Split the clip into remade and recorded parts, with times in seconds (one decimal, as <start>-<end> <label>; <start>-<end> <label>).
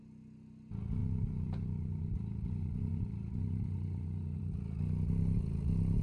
0.0-1.0 recorded; 1.0-4.6 remade; 4.6-6.0 recorded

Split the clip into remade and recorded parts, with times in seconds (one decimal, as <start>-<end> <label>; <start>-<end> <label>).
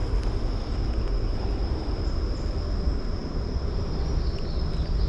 0.0-5.1 recorded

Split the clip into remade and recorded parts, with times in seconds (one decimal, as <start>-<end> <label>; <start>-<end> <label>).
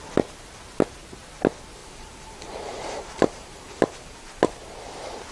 0.0-1.8 recorded; 1.8-4.5 remade; 4.5-5.3 recorded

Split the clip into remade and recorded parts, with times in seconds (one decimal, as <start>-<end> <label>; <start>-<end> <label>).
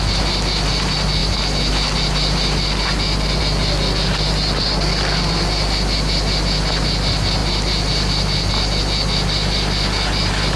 0.0-1.2 recorded; 1.2-3.4 remade; 3.4-7.4 recorded; 7.4-8.8 remade; 8.8-10.6 recorded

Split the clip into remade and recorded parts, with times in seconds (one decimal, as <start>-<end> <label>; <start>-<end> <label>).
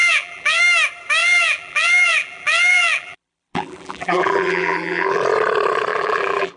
0.0-0.6 remade; 0.6-1.2 recorded; 1.2-5.2 remade; 5.2-5.9 recorded; 5.9-6.6 remade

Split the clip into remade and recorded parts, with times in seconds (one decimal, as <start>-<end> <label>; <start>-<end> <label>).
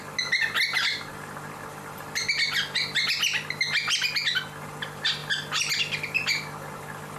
0.0-7.2 recorded